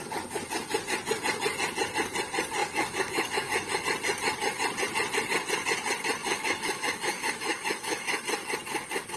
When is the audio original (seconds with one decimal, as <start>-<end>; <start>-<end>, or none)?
0.0-2.6; 3.8-6.2; 8.2-9.2